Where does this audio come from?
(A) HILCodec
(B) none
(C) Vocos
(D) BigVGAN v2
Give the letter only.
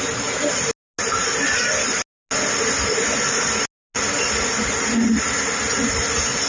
B